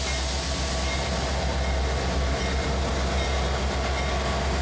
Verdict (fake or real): real